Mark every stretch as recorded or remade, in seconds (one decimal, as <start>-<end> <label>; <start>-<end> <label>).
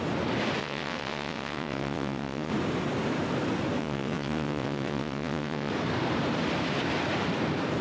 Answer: 0.0-0.6 recorded; 0.6-2.5 remade; 2.5-3.8 recorded; 3.8-5.7 remade; 5.7-7.8 recorded